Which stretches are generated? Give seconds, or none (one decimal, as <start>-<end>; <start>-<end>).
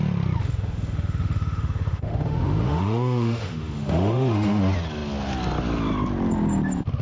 0.4-4.6